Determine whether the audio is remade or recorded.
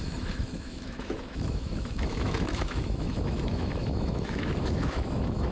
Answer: remade